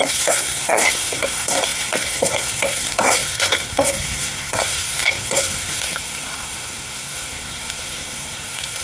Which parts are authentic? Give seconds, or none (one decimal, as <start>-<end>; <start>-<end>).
none